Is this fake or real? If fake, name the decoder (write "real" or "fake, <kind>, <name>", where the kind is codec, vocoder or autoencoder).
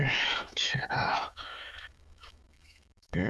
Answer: fake, autoencoder, DAC-VAE